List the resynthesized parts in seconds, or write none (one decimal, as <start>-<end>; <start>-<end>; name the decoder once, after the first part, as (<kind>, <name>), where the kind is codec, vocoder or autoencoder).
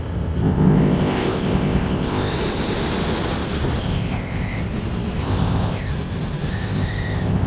0.0-2.3 (codec, ZipCodec); 3.8-4.6; 5.2-5.9; 6.5-7.5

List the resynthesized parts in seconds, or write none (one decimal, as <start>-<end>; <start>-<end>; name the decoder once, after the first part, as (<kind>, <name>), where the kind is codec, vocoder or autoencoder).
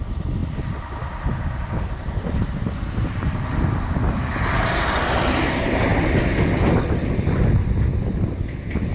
none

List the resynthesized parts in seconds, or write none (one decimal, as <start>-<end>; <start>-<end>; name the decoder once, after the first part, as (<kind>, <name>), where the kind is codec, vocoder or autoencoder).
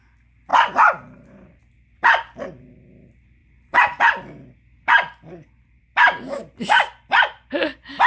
0.5-1.6 (vocoder, BigVGAN v2); 3.4-4.0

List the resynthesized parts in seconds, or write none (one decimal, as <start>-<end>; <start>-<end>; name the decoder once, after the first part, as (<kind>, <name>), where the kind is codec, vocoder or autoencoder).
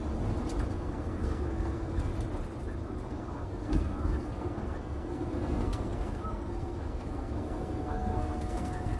0.7-2.1 (codec, SNAC); 3.1-9.0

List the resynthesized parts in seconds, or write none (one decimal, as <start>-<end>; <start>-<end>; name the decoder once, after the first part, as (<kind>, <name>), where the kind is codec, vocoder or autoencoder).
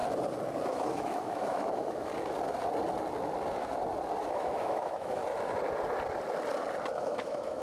0.7-2.1 (autoencoder, DAC-VAE); 4.3-5.2; 7.0-7.6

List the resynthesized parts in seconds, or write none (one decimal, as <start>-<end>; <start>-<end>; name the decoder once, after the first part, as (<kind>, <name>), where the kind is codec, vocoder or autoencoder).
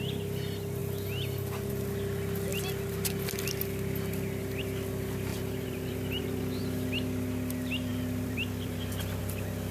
5.3-6.6 (vocoder, BigVGAN v2); 7.9-9.2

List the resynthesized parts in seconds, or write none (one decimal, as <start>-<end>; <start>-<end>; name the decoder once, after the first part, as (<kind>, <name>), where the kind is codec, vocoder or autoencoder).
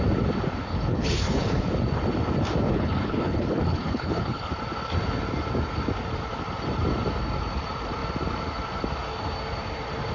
0.7-1.6 (codec, HILCodec); 2.7-4.5